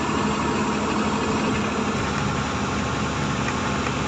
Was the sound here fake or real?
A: real